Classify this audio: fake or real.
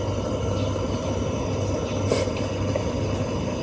real